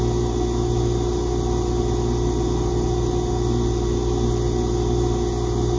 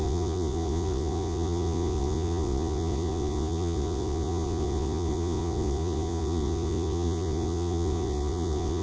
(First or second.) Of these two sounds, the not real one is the second